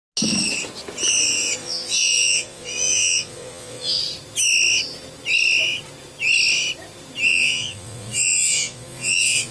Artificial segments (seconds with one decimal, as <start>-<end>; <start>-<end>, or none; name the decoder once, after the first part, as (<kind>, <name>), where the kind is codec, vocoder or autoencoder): 1.6-4.0 (vocoder, Vocos); 7.3-9.5